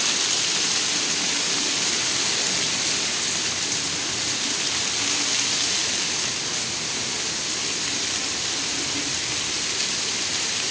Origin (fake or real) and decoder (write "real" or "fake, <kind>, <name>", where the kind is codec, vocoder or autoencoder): real